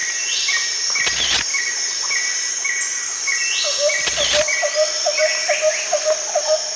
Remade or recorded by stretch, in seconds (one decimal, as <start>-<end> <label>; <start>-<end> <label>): 0.0-0.8 remade; 0.8-1.5 recorded; 1.5-2.5 remade; 2.5-6.8 recorded